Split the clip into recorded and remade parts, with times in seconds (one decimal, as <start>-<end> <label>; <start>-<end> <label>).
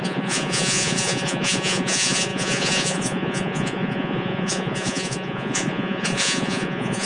0.0-7.1 remade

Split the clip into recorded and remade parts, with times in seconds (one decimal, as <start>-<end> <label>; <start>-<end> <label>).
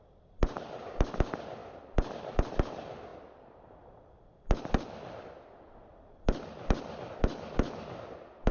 0.0-8.5 recorded